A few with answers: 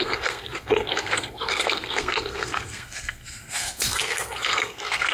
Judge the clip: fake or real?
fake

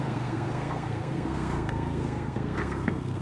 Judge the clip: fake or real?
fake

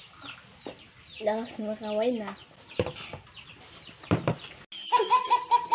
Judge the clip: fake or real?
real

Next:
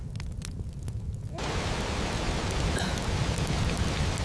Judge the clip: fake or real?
real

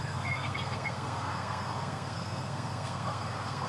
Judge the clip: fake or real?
fake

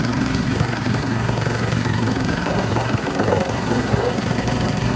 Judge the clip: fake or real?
fake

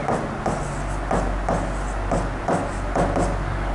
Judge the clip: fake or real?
real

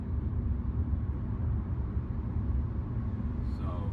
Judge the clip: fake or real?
real